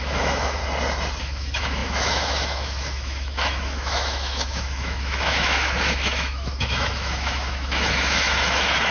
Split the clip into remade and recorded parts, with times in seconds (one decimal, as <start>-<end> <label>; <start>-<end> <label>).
0.0-0.6 remade; 0.6-1.2 recorded; 1.2-8.9 remade